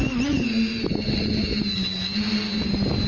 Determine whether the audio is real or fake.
real